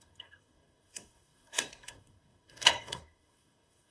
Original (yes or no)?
no